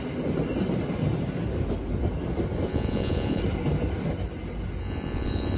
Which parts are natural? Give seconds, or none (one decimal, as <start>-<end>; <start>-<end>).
0.0-2.7; 3.4-4.8